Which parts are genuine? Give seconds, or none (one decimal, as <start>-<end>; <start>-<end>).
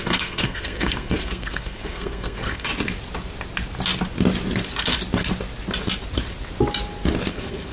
2.7-7.3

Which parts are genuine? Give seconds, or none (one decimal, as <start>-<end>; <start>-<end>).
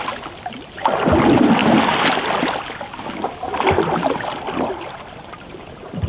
0.0-6.1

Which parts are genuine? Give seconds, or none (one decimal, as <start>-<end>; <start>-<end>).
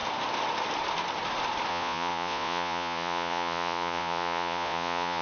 0.0-1.7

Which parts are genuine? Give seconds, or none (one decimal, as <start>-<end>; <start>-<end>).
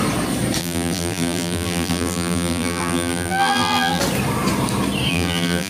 0.0-0.6; 4.0-5.1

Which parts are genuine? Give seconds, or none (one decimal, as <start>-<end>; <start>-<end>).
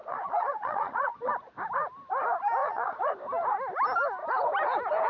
1.3-2.6; 3.1-5.1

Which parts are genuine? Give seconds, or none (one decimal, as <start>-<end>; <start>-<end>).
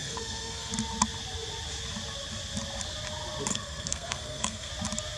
0.7-3.5; 4.7-5.2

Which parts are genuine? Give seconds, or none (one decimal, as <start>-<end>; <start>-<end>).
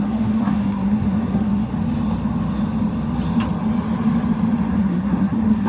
1.7-4.7